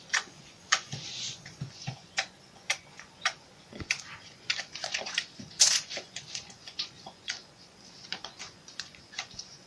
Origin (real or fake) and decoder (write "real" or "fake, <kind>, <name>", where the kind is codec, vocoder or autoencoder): fake, vocoder, Vocos